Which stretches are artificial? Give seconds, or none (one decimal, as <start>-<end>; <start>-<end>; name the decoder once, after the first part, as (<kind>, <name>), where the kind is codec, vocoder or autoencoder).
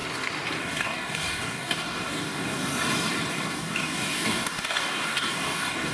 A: 0.6-2.7 (codec, DAC); 3.3-5.9